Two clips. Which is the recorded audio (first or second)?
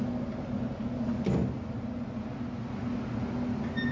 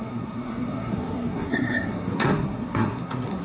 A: first